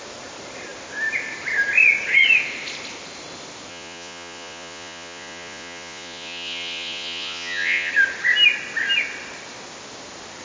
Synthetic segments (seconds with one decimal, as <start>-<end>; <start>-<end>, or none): 3.7-7.9